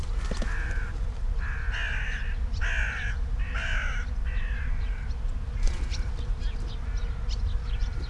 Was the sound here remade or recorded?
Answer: recorded